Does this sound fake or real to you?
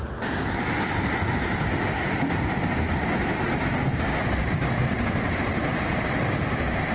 real